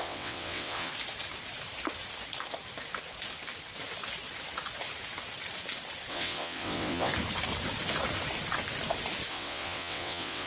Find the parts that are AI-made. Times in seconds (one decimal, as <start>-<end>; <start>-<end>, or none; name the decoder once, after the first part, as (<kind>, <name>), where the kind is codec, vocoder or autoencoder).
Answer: 0.0-0.9 (vocoder, WaveNeXt); 6.1-7.1; 9.3-10.5